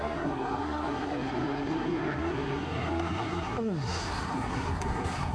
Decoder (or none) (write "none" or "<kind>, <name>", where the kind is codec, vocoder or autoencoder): codec, SNAC